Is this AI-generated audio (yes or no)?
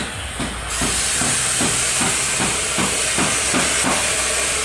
no